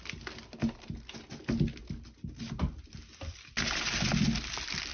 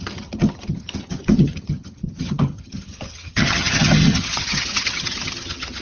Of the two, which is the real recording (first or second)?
first